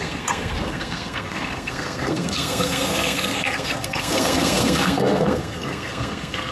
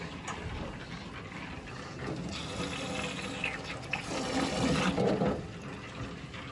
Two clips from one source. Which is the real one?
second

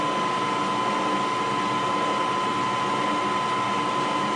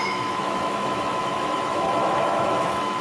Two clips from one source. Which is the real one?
first